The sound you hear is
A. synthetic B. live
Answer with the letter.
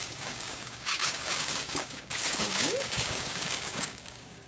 A